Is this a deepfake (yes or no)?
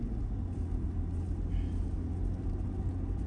no